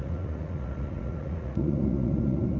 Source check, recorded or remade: remade